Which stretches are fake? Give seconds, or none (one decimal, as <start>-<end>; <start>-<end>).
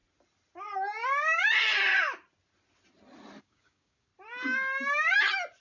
3.4-4.1